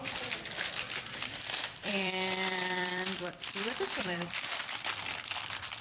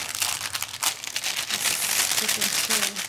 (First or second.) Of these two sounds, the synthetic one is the first